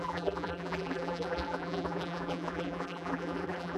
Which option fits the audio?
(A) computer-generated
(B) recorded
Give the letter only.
A